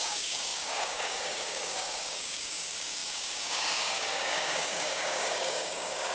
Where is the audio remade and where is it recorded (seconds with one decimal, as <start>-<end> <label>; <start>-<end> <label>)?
0.0-6.1 remade